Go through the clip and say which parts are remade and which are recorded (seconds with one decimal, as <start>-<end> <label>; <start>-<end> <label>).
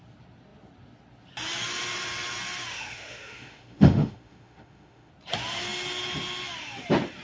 0.0-2.7 recorded; 2.7-5.1 remade; 5.1-7.2 recorded